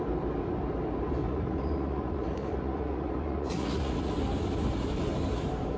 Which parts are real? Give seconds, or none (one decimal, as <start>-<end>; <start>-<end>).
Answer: 0.0-1.2; 4.1-5.8